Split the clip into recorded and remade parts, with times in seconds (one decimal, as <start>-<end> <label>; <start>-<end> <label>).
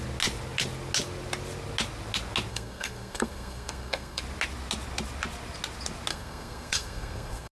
0.0-2.5 recorded; 2.5-4.2 remade; 4.2-6.1 recorded; 6.1-7.5 remade